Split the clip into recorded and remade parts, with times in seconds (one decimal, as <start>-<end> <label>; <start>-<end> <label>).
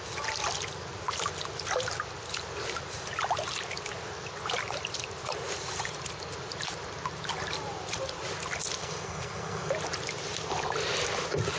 0.0-8.8 recorded; 8.8-9.7 remade; 9.7-11.6 recorded